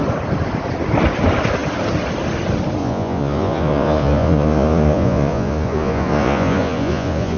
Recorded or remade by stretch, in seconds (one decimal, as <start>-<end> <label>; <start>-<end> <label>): 0.0-2.8 recorded; 2.8-7.4 remade